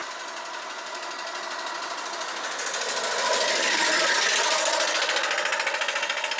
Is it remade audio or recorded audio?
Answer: recorded